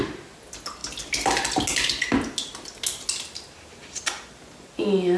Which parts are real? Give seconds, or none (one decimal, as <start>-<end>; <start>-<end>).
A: 0.0-5.2